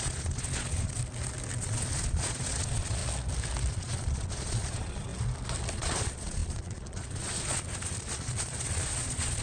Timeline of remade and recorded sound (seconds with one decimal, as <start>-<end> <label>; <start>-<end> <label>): 0.0-1.0 remade; 1.0-1.6 recorded; 1.6-3.0 remade; 3.0-3.7 recorded; 3.7-5.1 remade; 5.1-5.7 recorded; 5.7-9.4 remade